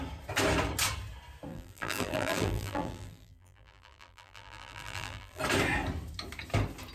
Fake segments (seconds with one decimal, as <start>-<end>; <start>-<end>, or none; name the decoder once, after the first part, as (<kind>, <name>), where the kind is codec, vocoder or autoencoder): 1.5-5.4 (vocoder, BigVGAN v2)